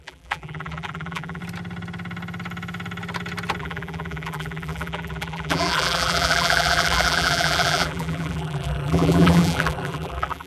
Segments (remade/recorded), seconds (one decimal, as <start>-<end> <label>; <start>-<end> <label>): 0.0-1.4 remade; 1.4-3.6 recorded; 3.6-10.5 remade